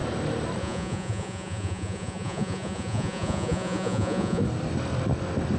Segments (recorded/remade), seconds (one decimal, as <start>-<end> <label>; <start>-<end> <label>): 0.0-0.6 recorded; 0.6-4.4 remade; 4.4-5.6 recorded